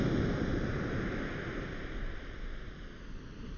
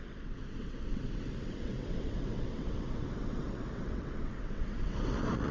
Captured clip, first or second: first